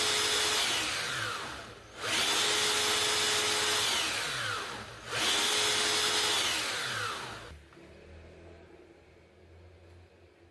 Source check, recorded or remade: recorded